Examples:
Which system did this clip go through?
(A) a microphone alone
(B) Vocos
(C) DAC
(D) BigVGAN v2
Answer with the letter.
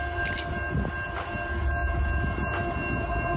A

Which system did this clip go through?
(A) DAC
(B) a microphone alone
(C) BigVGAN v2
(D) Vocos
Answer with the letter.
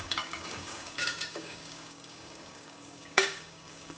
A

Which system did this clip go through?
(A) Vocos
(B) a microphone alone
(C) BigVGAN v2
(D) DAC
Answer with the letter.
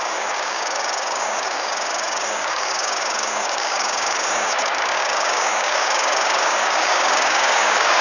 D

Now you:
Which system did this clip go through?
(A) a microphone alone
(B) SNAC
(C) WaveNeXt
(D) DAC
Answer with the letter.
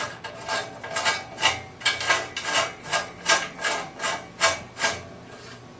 A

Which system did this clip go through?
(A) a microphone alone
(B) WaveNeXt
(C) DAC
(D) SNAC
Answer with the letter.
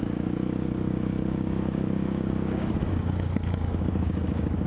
C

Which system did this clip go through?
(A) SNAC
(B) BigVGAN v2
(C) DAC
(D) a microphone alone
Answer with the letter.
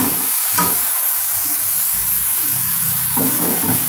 C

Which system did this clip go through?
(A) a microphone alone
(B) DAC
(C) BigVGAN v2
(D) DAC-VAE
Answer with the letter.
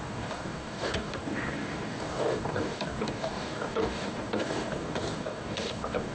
B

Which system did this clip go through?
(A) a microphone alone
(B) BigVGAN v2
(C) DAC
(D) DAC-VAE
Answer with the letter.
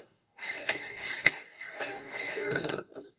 C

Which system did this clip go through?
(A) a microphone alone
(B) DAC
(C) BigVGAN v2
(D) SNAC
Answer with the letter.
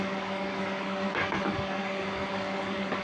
B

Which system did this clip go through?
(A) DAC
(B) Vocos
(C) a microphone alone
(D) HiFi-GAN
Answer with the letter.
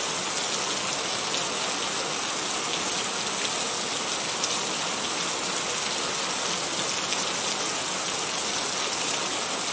C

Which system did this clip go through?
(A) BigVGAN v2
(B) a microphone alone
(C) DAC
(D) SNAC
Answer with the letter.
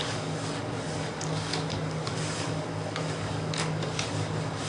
C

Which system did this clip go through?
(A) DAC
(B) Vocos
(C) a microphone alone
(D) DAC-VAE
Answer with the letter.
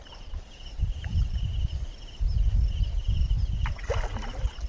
C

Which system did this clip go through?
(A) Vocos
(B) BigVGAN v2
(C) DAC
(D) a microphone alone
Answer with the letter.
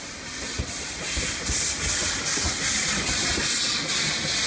D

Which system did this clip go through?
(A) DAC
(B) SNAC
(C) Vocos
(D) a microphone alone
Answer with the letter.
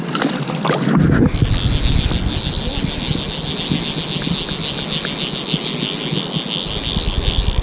D